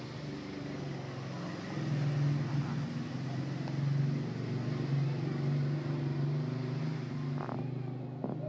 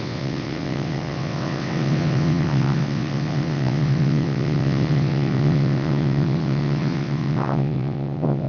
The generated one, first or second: second